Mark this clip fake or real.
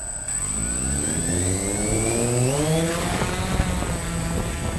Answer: real